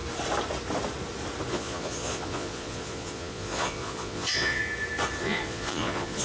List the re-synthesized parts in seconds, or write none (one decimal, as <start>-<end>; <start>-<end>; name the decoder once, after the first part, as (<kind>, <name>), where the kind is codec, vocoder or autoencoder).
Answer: 1.5-4.6 (vocoder, Vocos); 5.2-6.2